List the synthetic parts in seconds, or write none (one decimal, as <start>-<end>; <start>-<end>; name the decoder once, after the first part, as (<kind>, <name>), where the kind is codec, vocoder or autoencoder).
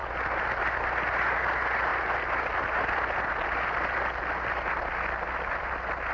none